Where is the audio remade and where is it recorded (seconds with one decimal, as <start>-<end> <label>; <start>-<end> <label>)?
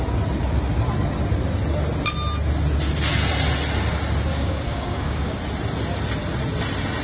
0.0-4.3 recorded; 4.3-5.4 remade; 5.4-7.0 recorded